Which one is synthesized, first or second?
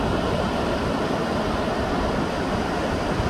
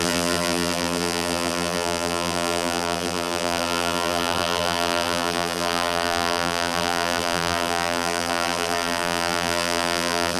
second